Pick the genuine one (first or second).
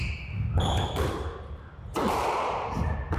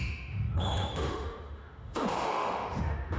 first